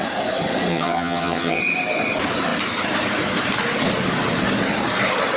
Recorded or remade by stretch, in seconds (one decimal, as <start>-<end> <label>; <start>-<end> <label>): 0.0-0.7 recorded; 0.7-1.6 remade; 1.6-5.4 recorded